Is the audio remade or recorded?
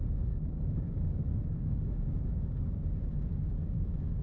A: remade